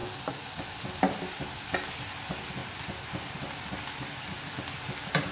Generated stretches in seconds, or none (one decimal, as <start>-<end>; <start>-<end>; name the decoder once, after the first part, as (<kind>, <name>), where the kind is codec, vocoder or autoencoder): none